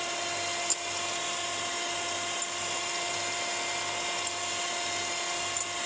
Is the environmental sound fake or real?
real